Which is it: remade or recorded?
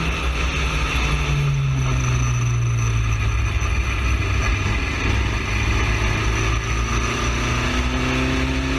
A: recorded